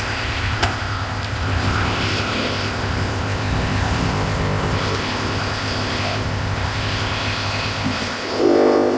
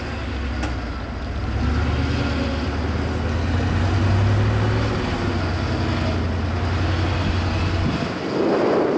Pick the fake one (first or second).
first